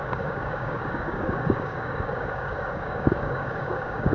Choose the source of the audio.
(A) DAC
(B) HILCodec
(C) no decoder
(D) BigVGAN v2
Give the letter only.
A